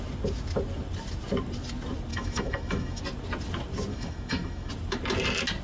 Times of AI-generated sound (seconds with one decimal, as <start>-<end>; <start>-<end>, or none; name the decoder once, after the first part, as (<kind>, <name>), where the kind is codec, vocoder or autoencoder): 2.1-3.0 (autoencoder, DAC-VAE); 3.9-4.7